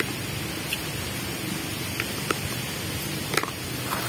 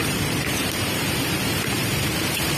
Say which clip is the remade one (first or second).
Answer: second